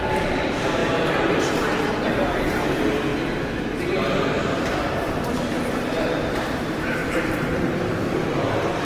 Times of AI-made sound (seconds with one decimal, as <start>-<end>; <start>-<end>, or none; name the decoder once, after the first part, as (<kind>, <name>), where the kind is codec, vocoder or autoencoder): 0.0-0.8 (vocoder, BigVGAN v2); 1.9-3.1; 4.3-8.8